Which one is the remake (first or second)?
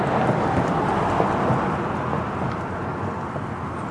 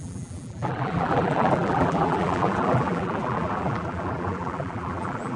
second